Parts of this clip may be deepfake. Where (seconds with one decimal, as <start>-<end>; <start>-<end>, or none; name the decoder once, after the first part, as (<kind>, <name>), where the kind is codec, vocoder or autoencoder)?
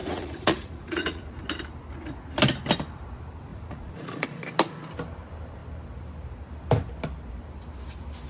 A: 0.0-1.3 (vocoder, Vocos); 3.5-4.4